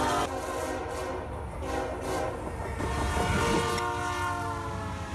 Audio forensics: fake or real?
real